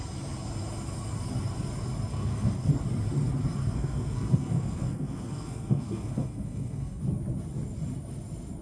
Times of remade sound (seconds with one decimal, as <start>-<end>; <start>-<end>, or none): 2.1-2.7; 3.6-7.0